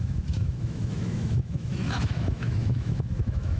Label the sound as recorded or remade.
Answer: remade